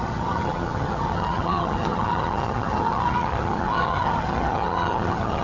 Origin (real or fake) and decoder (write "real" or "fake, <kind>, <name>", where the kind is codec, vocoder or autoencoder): fake, vocoder, HiFi-GAN